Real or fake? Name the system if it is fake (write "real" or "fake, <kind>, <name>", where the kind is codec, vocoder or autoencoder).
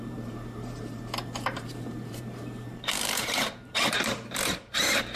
fake, vocoder, BigVGAN v2